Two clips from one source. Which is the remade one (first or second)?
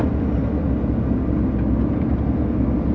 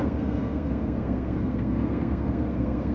second